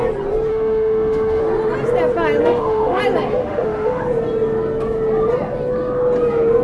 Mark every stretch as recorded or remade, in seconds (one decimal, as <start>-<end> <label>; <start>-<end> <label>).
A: 0.0-0.5 recorded; 0.5-1.4 remade; 1.4-2.4 recorded; 2.4-3.0 remade; 3.0-3.4 recorded; 3.4-4.0 remade; 4.0-6.6 recorded